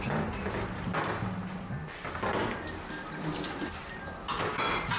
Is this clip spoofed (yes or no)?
no